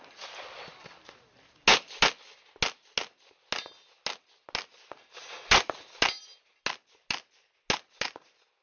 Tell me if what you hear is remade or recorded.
recorded